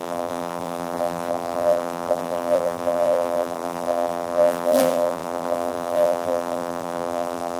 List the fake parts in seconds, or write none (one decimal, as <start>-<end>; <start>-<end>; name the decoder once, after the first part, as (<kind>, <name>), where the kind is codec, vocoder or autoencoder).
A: 0.0-7.6 (vocoder, BigVGAN v2)